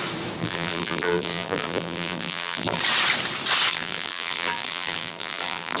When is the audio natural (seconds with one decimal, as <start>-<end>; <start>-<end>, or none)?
0.0-0.4; 2.8-3.7